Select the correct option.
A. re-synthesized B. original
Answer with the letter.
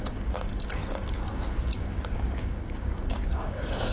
A